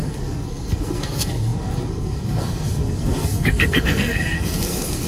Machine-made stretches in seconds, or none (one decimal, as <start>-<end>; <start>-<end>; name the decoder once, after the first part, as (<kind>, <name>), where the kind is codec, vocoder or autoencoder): 0.0-5.1 (codec, SNAC)